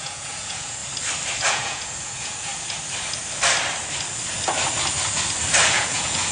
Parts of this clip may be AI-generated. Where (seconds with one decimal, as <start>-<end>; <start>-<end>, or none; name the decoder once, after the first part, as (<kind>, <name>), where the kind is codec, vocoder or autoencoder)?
0.0-0.8 (vocoder, Vocos); 1.5-2.5; 5.7-6.3